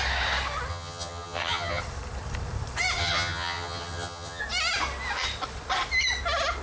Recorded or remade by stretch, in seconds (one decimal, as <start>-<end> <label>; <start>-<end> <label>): 0.0-0.7 recorded; 0.7-1.8 remade; 1.8-3.0 recorded; 3.0-4.4 remade; 4.4-6.6 recorded